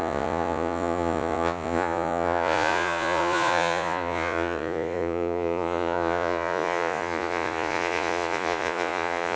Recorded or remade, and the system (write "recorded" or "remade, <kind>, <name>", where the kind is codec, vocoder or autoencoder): remade, vocoder, Vocos